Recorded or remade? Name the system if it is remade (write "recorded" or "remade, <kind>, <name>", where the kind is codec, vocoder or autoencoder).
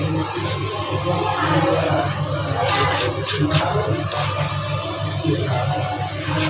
recorded